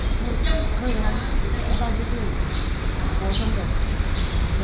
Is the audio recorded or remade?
recorded